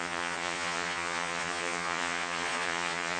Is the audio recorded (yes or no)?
no